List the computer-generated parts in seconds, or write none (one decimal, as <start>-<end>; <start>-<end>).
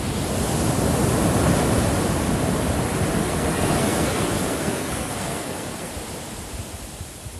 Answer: 3.2-5.9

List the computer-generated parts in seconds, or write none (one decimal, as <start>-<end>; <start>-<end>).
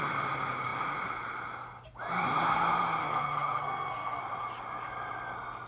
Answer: 3.0-4.2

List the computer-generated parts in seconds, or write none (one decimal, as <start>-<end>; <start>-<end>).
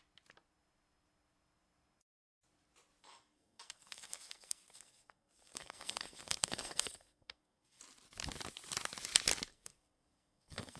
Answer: 3.0-7.8; 9.5-10.8